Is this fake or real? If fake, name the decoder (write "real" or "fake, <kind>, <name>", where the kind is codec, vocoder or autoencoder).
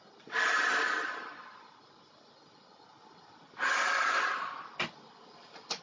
real